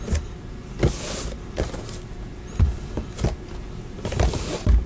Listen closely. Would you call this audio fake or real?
real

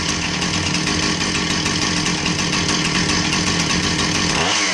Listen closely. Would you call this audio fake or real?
real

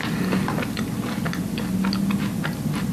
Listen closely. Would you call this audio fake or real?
real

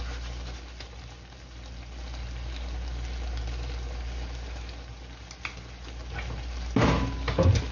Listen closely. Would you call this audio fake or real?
real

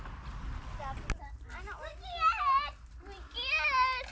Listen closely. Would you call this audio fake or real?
real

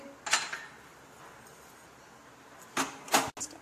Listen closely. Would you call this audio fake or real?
real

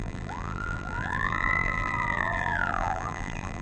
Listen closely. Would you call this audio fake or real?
fake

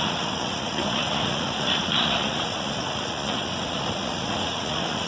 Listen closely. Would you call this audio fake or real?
fake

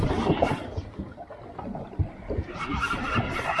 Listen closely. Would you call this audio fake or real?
real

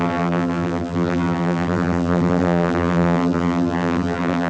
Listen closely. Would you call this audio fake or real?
fake